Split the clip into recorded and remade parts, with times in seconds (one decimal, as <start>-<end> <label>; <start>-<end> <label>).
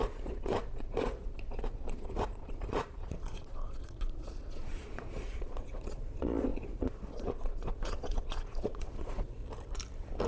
0.0-9.4 remade; 9.4-10.3 recorded